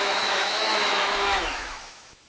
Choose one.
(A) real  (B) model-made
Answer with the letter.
B